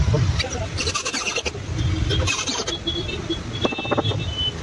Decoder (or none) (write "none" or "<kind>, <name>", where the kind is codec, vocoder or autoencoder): none